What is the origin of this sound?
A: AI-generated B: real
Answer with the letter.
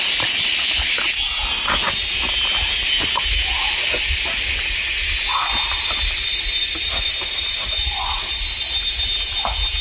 B